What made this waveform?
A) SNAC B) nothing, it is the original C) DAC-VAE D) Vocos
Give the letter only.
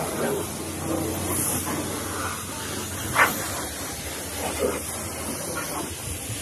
B